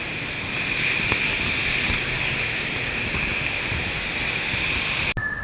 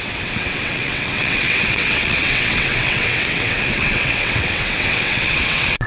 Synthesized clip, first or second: second